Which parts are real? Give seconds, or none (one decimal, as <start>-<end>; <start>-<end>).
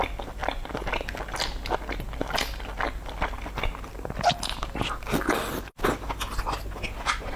0.0-7.4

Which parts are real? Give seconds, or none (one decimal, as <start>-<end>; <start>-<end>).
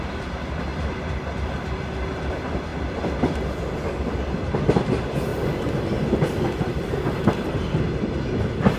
0.7-2.3; 2.7-3.2; 5.3-8.4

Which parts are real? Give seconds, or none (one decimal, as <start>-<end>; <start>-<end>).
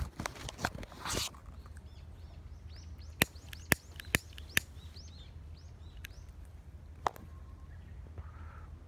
0.0-8.9